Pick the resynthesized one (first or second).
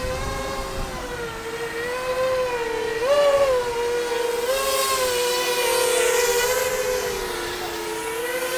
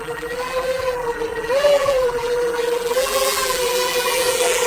second